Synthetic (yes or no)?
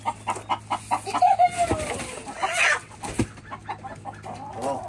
no